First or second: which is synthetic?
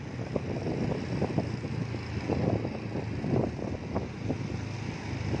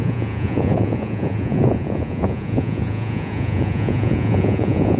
second